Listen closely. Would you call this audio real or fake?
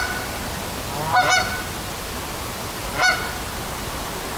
real